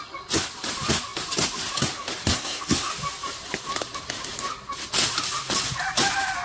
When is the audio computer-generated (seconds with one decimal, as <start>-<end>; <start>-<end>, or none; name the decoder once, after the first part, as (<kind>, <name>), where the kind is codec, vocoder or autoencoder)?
2.3-2.9 (codec, SNAC)